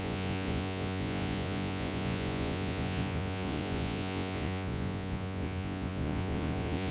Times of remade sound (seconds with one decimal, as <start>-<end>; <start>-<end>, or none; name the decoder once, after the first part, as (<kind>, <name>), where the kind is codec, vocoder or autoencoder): 0.0-6.9 (vocoder, Vocos)

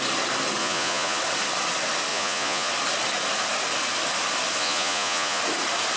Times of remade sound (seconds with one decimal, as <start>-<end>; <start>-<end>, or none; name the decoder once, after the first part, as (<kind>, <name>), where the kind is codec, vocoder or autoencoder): 0.6-1.2 (vocoder, Vocos); 2.1-2.7; 4.6-5.4

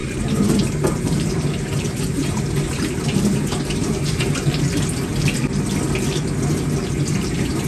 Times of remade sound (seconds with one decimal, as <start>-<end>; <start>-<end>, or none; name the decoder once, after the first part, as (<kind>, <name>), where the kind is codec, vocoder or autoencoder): 0.0-4.6 (vocoder, BigVGAN v2)